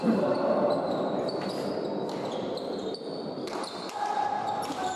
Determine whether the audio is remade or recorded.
remade